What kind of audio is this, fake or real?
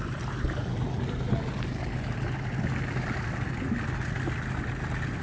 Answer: real